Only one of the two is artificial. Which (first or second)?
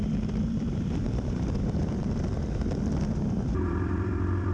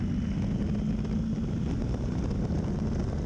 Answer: first